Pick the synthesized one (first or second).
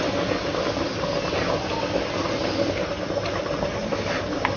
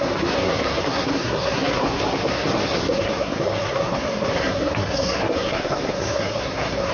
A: second